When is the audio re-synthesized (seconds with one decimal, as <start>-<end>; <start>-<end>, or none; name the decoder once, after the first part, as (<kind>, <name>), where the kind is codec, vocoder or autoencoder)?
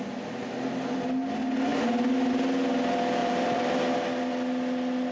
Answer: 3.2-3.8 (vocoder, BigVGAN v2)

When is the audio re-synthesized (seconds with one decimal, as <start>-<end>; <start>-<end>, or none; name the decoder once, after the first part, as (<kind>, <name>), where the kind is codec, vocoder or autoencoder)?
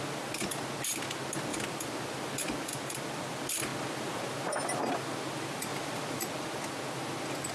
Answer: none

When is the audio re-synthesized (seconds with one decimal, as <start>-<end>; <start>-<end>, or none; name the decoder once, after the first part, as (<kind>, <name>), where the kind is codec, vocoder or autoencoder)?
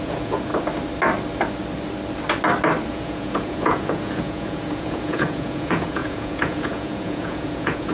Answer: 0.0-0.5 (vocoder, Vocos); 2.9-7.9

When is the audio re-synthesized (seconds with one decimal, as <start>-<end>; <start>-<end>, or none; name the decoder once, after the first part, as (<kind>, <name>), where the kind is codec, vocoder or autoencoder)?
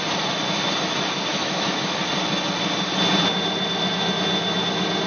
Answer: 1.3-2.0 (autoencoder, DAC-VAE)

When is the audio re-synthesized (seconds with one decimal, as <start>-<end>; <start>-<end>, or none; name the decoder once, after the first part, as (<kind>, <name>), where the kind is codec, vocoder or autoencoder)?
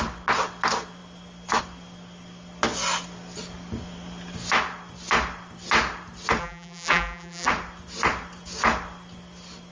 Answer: 6.4-7.5 (vocoder, BigVGAN v2)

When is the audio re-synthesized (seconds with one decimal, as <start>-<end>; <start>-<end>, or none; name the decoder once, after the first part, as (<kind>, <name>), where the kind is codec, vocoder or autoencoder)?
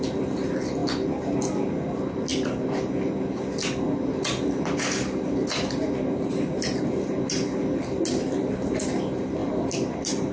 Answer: 9.4-10.3 (vocoder, BigVGAN v2)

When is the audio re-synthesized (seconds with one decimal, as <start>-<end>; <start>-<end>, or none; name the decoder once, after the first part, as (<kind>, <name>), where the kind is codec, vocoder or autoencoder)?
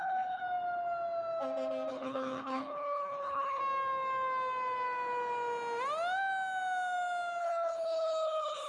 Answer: 0.0-0.4 (codec, HILCodec); 1.9-3.6; 7.4-8.7